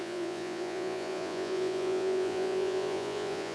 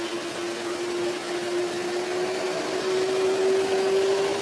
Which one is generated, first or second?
first